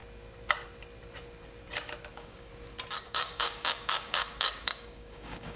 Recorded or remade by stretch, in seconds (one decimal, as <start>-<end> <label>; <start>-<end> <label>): 0.0-2.1 recorded; 2.1-2.5 remade; 2.5-3.0 recorded; 3.0-5.6 remade